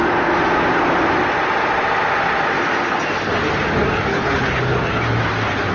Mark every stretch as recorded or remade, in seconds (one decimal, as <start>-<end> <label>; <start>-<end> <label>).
0.0-4.1 recorded; 4.1-4.6 remade; 4.6-5.7 recorded

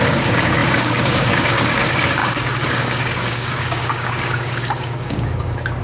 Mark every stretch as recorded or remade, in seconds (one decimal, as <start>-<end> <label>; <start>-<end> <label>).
0.0-5.8 remade

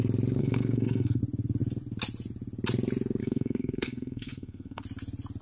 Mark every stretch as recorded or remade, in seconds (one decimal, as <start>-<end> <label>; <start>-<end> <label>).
0.0-0.4 recorded; 0.4-1.2 remade; 1.2-3.2 recorded; 3.2-4.8 remade; 4.8-5.4 recorded

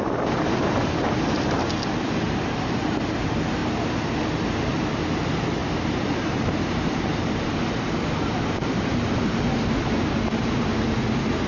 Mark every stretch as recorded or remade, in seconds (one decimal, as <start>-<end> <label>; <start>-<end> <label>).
0.0-5.6 recorded; 5.6-9.7 remade; 9.7-11.5 recorded